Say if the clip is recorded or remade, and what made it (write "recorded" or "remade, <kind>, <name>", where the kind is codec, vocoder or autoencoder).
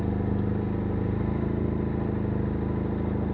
recorded